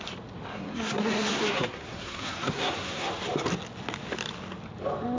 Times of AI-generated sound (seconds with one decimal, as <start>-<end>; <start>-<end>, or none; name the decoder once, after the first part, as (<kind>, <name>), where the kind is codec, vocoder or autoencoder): 0.5-3.1 (codec, SNAC)